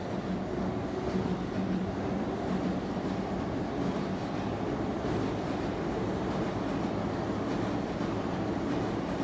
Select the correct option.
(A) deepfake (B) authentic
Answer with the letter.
B